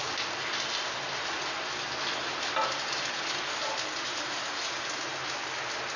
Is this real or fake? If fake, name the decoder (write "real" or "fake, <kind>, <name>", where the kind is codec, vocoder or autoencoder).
real